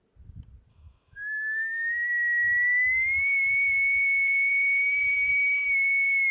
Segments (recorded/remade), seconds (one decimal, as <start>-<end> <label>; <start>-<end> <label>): 0.0-0.7 recorded; 0.7-4.5 remade; 4.5-5.3 recorded; 5.3-6.3 remade